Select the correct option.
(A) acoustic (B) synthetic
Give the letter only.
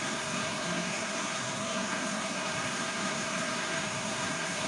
B